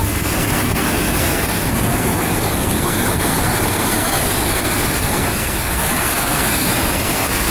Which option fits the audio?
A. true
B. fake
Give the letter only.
B